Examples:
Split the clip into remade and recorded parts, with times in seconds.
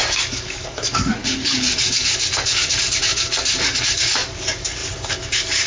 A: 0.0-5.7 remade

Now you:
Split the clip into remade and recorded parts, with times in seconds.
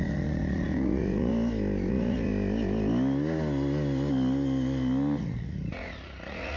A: 0.0-1.3 remade; 1.3-1.9 recorded; 1.9-2.3 remade; 2.3-5.2 recorded; 5.2-6.6 remade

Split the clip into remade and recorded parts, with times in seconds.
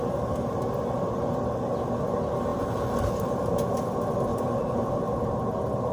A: 0.0-2.5 recorded; 2.5-3.4 remade; 3.4-4.3 recorded; 4.3-4.8 remade; 4.8-5.9 recorded